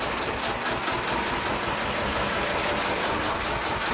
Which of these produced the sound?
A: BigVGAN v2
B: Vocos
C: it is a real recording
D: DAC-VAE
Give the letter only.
C